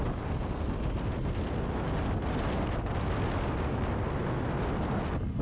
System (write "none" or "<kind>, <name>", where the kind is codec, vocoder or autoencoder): none